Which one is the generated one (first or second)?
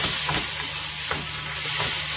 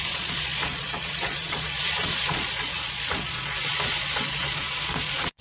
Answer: second